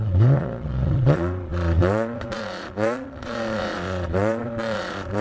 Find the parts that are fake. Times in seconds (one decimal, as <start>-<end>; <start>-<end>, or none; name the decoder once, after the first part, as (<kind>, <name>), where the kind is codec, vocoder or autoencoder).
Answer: 0.0-5.2 (vocoder, Vocos)